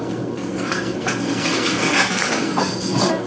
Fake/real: fake